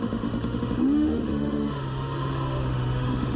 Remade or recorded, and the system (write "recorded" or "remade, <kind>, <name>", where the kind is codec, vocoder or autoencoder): remade, autoencoder, DAC-VAE